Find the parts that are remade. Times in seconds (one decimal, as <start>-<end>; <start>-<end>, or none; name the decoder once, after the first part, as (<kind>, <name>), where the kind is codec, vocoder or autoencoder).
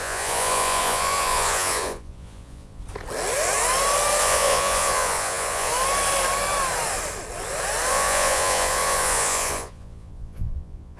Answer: 0.0-2.8 (vocoder, Vocos); 4.2-5.7; 7.9-11.0